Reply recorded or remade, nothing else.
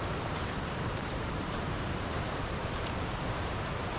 remade